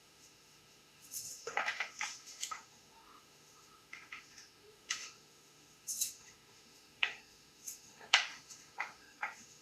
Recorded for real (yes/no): no